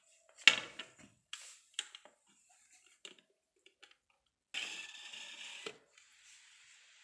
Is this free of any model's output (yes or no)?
yes